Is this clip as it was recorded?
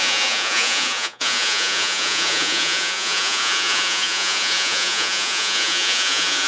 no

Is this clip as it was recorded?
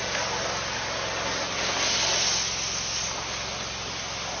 yes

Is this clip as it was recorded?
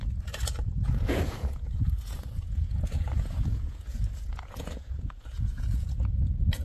no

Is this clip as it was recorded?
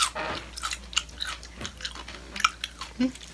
yes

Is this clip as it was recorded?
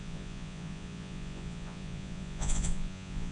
no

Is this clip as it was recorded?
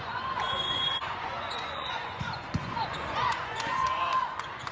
no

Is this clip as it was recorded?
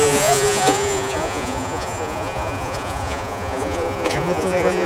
no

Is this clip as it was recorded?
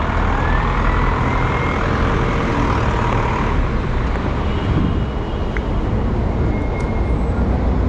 yes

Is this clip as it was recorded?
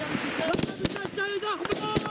yes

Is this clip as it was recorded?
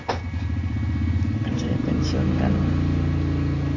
yes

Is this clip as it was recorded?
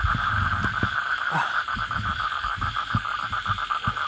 yes